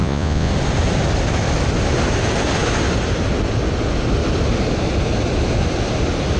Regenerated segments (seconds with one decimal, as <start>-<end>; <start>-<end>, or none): 0.0-0.5

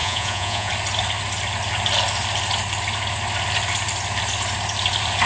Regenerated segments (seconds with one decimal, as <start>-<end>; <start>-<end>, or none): 0.0-0.7

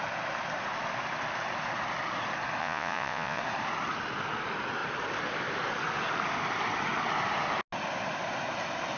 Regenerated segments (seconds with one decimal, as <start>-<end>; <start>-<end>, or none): 2.6-3.4

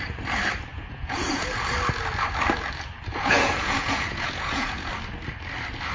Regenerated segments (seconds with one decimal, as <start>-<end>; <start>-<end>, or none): 0.7-1.5; 3.1-4.9

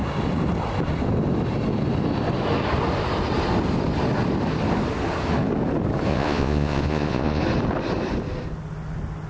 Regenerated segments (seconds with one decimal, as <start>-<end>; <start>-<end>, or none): 6.1-7.4

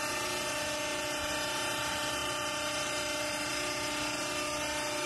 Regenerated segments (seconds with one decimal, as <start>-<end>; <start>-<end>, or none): none

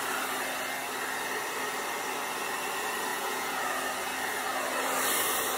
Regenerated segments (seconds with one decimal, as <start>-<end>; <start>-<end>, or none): 3.1-3.6

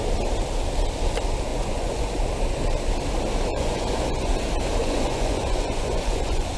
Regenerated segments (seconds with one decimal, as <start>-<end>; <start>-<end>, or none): 1.5-2.1; 3.5-4.3; 4.8-6.6